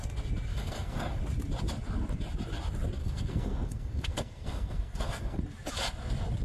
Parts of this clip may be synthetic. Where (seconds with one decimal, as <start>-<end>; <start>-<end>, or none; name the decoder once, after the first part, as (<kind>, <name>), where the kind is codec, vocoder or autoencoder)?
0.5-1.2 (codec, SNAC); 3.0-5.4